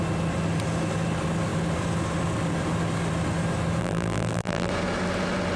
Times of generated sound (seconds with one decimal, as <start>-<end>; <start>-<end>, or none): 3.8-4.7